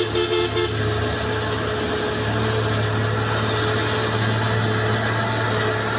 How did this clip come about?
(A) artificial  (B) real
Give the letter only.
B